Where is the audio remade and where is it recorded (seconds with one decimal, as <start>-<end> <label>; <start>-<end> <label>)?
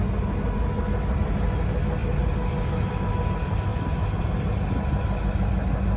0.0-6.0 recorded